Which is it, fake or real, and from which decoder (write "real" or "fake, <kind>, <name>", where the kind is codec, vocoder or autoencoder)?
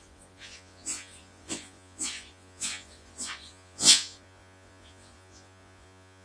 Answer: fake, vocoder, Vocos